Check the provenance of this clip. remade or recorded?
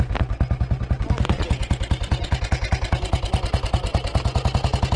recorded